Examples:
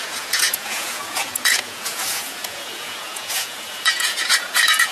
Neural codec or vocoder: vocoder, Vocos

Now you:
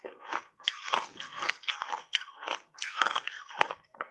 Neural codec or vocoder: codec, SNAC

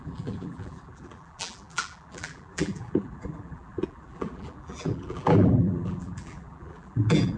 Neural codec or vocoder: vocoder, BigVGAN v2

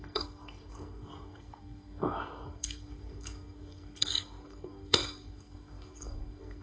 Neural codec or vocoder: codec, SNAC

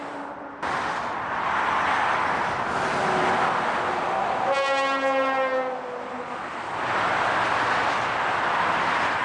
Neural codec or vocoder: none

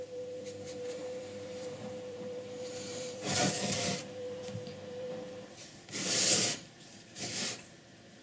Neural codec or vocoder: vocoder, BigVGAN v2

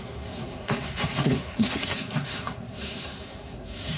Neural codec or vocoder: codec, SNAC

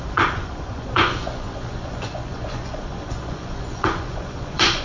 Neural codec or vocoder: vocoder, Vocos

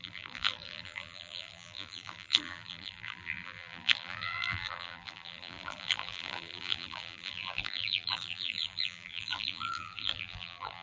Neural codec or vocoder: vocoder, BigVGAN v2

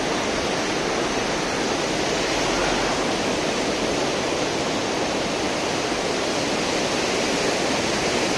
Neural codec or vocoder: none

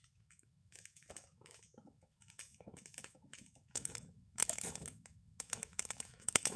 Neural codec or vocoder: autoencoder, DAC-VAE